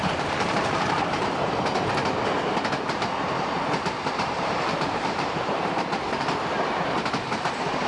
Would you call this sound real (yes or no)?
no